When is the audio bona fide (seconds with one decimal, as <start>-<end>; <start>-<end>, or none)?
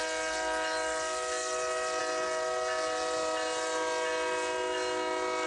0.0-5.5